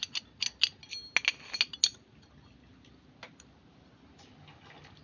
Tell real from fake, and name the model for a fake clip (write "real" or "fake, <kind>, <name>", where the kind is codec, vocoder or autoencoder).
real